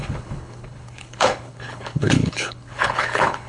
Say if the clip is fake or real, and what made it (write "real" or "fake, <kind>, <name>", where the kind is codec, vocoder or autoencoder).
fake, codec, HILCodec